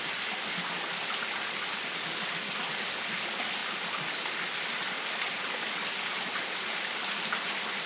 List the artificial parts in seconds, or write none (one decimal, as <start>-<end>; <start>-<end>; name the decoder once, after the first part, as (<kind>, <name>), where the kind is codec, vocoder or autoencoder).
none

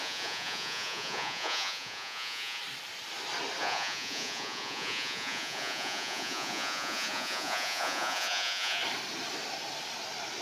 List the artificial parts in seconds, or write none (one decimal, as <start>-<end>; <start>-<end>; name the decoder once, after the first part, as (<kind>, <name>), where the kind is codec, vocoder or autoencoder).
0.0-2.6 (vocoder, Vocos); 3.6-8.8

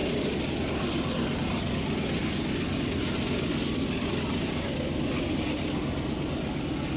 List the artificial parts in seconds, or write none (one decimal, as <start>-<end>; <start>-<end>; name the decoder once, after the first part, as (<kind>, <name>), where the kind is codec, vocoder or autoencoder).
none

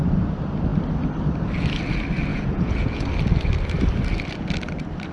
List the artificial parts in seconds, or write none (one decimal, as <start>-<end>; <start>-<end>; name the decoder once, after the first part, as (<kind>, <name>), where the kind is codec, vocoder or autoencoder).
2.3-3.0 (vocoder, Vocos)

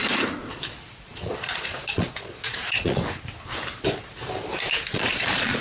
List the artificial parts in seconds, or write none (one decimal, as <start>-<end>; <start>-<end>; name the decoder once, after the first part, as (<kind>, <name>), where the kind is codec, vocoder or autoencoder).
0.9-3.0 (vocoder, Vocos); 4.9-5.6